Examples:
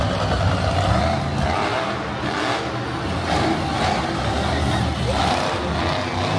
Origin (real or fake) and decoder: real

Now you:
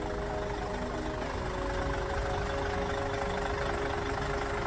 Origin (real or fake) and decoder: real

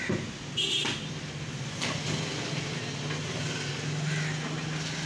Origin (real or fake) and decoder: real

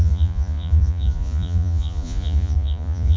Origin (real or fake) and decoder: fake, vocoder, Vocos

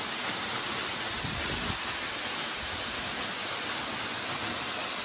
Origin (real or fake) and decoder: real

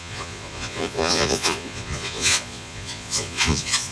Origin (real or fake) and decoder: fake, vocoder, Vocos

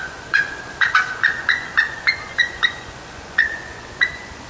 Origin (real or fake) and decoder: fake, vocoder, Vocos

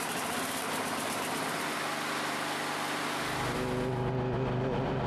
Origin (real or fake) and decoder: real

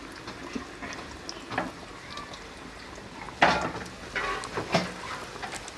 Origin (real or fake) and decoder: real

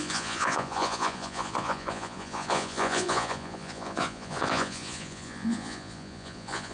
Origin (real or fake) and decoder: fake, vocoder, Vocos